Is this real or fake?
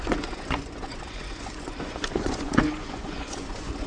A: fake